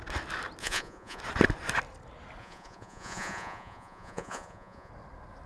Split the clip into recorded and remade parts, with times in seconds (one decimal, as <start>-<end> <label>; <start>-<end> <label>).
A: 0.0-0.6 recorded; 0.6-1.2 remade; 1.2-2.4 recorded; 2.4-4.9 remade; 4.9-5.5 recorded

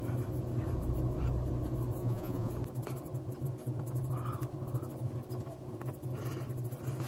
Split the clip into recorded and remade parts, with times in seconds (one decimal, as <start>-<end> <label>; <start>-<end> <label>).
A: 0.0-2.0 recorded; 2.0-2.5 remade; 2.5-7.1 recorded

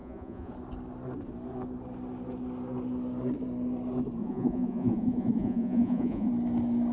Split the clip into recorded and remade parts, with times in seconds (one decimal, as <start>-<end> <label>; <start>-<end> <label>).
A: 0.0-0.5 remade; 0.5-4.2 recorded; 4.2-6.3 remade; 6.3-6.9 recorded

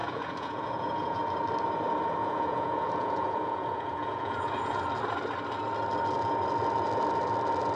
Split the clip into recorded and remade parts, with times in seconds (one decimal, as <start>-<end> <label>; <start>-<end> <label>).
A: 0.0-1.2 remade; 1.2-2.2 recorded; 2.2-4.8 remade; 4.8-7.8 recorded